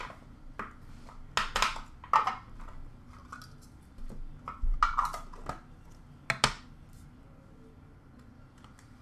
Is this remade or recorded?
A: recorded